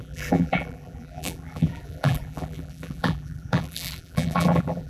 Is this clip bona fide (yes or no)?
no